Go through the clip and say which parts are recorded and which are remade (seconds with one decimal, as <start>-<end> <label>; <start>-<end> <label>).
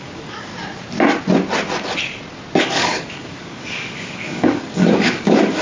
0.0-0.5 remade; 0.5-2.6 recorded; 2.6-5.6 remade